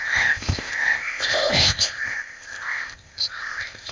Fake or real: fake